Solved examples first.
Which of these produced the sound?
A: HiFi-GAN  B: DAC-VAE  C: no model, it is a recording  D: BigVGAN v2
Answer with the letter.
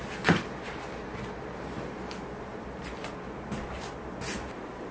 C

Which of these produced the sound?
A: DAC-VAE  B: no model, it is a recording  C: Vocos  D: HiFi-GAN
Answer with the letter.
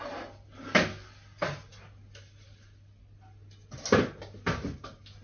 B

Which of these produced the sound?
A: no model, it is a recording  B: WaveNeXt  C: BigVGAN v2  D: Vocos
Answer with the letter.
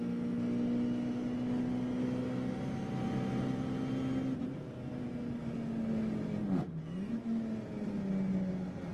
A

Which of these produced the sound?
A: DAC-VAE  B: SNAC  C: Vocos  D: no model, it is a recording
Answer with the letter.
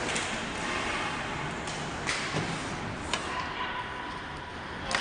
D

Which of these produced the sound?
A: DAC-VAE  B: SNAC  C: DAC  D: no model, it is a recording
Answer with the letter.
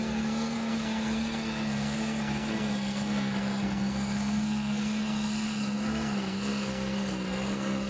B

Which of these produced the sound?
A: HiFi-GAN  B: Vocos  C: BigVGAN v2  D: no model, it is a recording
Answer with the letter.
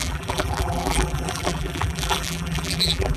C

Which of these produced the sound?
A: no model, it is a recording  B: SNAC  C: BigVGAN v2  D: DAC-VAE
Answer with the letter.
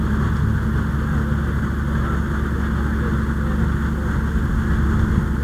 A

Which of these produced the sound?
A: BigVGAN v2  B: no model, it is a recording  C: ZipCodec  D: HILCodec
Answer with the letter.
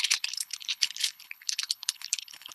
D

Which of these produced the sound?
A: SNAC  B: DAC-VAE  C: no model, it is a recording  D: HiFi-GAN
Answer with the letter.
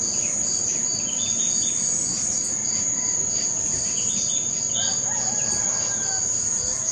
C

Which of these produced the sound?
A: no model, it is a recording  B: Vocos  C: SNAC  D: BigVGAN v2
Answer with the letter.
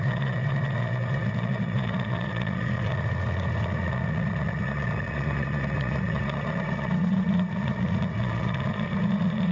B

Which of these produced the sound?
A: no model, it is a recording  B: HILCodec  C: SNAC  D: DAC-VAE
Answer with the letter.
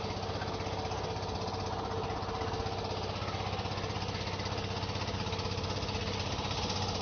A